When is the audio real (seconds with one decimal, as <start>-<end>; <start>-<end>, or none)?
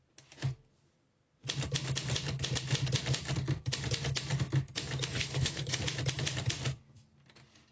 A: 0.0-5.1; 5.8-7.7